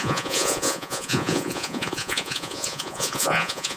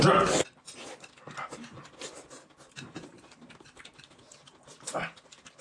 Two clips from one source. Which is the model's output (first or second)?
first